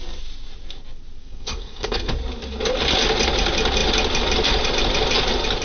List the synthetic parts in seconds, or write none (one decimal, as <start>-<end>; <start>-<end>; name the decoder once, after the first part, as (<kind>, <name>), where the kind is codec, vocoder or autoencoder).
1.2-2.1 (codec, SNAC)